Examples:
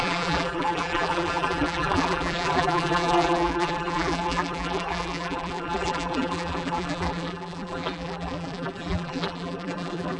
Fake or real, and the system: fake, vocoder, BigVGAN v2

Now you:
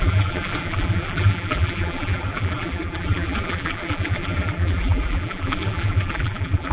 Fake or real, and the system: fake, vocoder, BigVGAN v2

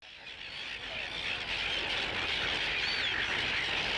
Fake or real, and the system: real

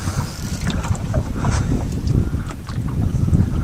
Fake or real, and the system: fake, vocoder, BigVGAN v2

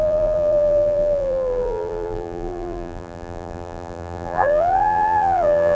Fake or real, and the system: fake, vocoder, BigVGAN v2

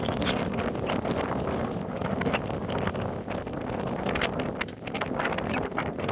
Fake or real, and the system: real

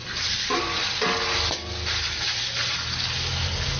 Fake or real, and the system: real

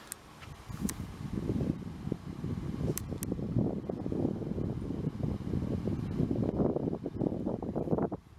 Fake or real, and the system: real